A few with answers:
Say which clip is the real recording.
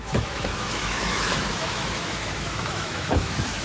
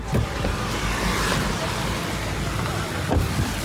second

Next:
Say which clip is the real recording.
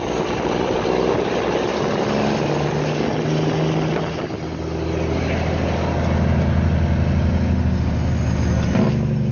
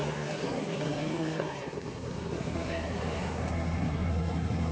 first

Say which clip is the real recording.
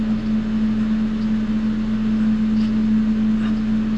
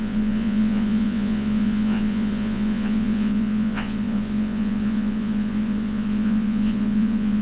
first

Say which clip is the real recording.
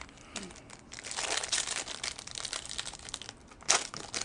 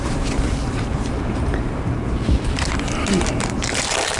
first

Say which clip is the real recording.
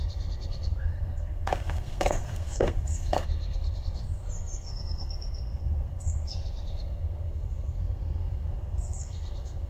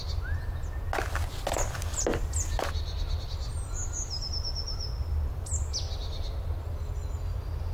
second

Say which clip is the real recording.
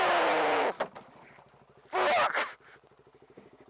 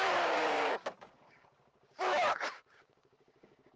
first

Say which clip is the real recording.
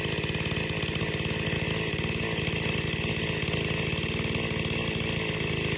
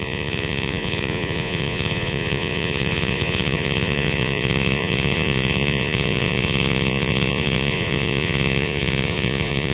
first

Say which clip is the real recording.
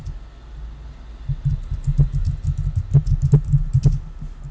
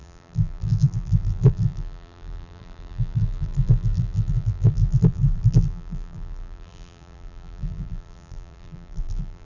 first